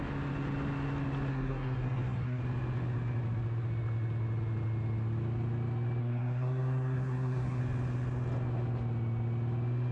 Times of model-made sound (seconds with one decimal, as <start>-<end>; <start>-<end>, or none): 1.3-2.4; 6.0-7.6